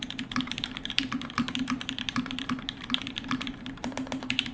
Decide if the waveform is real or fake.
fake